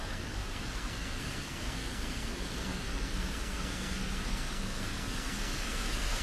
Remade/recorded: remade